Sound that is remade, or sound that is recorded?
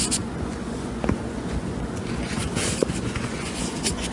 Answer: remade